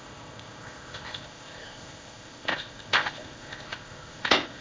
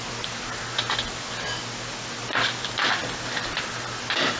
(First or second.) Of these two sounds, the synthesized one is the first